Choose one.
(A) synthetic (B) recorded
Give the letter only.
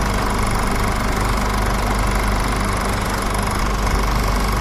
B